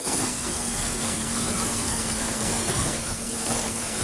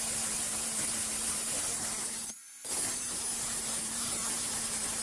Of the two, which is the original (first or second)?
second